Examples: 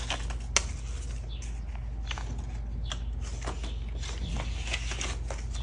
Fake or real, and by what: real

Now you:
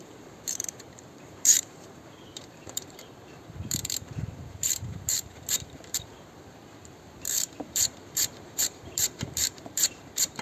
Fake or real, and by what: fake, vocoder, BigVGAN v2